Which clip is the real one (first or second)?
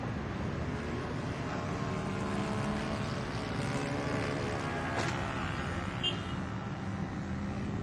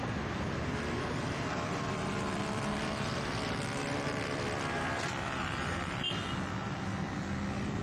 first